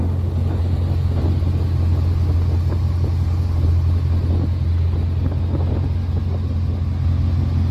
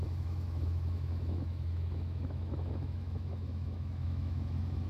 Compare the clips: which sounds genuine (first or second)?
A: first